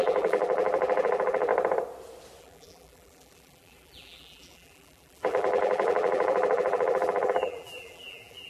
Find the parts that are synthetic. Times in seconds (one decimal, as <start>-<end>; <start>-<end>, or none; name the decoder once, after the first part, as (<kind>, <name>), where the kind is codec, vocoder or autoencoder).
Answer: 0.0-1.5 (vocoder, BigVGAN v2); 2.4-8.5